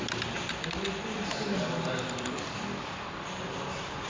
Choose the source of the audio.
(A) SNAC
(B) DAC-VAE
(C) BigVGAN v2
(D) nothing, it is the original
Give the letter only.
D